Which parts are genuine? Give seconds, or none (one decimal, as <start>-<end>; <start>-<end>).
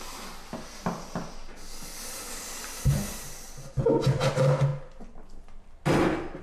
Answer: 0.0-6.4